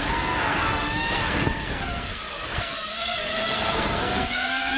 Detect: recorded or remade remade